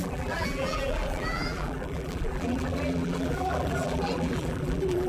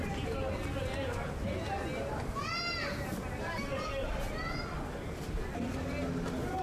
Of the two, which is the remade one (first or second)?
first